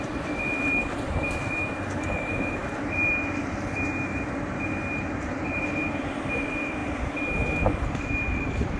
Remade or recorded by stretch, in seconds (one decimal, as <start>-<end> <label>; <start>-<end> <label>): 0.0-8.8 recorded